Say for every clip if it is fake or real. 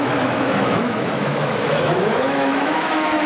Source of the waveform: fake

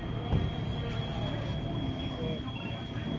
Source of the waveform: real